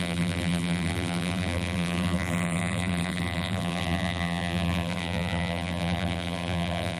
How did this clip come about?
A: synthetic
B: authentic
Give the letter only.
A